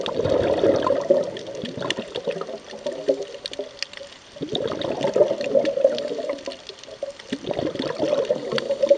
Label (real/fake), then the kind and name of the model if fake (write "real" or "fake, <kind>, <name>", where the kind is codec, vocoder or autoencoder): real